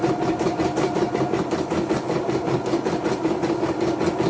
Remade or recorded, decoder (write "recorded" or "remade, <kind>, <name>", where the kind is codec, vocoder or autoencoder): recorded